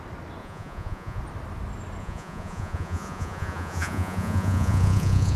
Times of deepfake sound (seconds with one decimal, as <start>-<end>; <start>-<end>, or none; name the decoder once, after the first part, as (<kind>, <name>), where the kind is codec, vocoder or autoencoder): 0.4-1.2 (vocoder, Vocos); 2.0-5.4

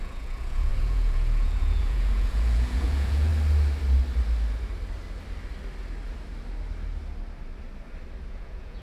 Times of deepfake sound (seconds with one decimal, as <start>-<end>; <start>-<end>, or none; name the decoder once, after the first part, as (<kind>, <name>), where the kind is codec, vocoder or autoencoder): 0.0-3.3 (vocoder, Vocos); 8.3-8.8

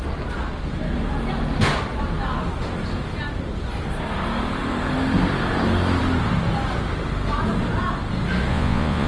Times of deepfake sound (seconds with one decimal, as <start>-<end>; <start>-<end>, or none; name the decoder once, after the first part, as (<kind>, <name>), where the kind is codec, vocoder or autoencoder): 8.5-9.1 (vocoder, Vocos)

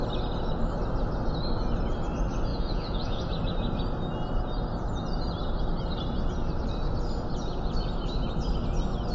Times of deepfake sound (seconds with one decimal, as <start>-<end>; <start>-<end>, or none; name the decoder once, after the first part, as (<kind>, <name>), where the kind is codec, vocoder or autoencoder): 2.5-3.2 (vocoder, Vocos)